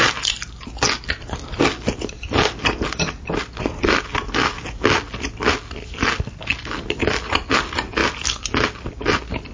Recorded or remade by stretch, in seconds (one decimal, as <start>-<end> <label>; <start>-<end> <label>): 0.0-9.5 recorded